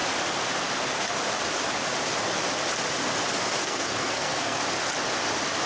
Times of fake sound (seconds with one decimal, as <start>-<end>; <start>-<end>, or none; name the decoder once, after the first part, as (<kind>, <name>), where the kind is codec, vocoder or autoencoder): 3.6-4.6 (codec, SNAC)